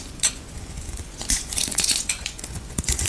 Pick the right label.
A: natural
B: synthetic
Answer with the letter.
B